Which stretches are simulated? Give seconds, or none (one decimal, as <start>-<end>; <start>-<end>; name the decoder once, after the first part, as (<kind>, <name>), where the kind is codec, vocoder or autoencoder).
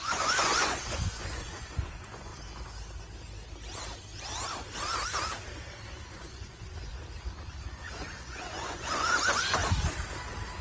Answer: 0.0-2.3 (vocoder, Vocos); 6.1-7.0; 7.7-9.6